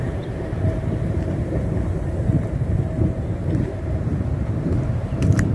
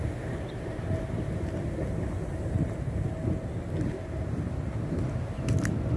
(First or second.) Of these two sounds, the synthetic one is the first